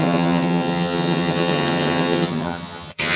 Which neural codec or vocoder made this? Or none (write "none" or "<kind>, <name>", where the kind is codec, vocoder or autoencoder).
vocoder, HiFi-GAN